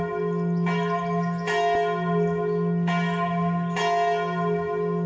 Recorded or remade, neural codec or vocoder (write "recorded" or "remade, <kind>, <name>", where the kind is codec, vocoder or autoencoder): recorded